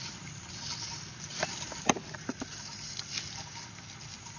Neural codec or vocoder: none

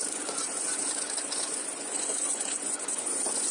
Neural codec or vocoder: vocoder, Vocos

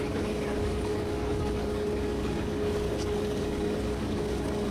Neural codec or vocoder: codec, DAC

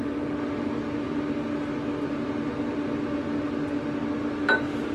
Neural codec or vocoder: none